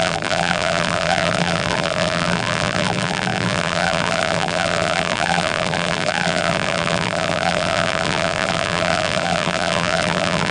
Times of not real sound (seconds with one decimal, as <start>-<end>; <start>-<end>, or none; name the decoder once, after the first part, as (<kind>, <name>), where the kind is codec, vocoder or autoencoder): 0.0-10.5 (vocoder, BigVGAN v2)